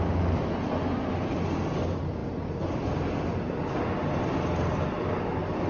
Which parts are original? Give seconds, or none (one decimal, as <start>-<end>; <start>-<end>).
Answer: 0.0-5.7

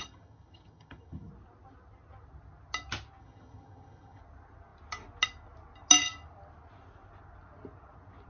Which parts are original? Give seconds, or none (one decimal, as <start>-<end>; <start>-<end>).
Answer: 1.3-3.2; 4.2-8.3

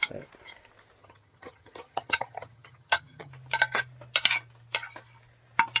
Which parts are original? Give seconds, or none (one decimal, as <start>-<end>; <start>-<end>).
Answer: 0.0-1.0; 3.3-5.8

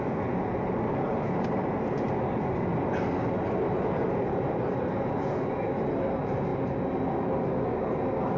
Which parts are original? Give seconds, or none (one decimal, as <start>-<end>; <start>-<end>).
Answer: 0.0-8.4

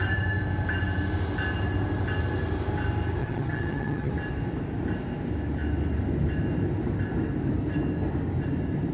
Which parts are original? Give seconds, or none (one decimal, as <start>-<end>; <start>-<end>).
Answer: 0.0-3.2; 4.1-8.9